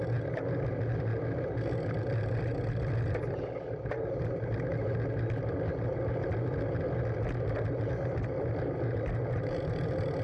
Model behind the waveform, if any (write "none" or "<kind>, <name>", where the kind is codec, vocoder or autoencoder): none